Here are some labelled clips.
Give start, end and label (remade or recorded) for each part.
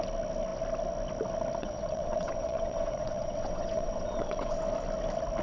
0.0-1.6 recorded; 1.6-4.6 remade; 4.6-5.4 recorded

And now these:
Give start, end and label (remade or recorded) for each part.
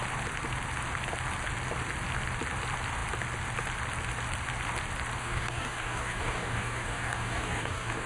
0.0-5.2 recorded; 5.2-8.1 remade